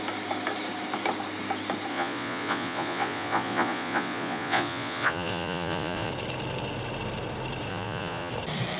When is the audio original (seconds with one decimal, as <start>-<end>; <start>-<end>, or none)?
0.0-1.9; 6.1-7.7; 8.3-8.8